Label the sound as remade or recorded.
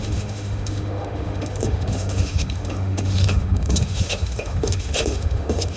remade